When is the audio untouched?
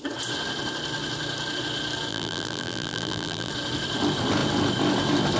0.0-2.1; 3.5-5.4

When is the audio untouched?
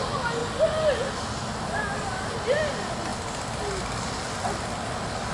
0.0-5.3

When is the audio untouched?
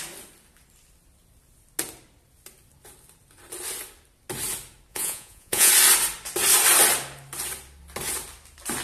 0.0-4.9; 5.7-8.8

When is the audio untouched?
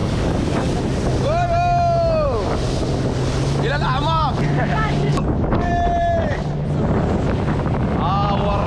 0.7-5.1; 5.7-8.7